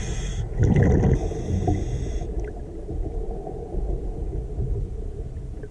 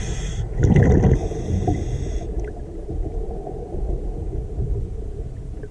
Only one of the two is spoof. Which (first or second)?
second